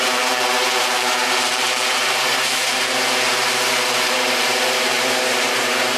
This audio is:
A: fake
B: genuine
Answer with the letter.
A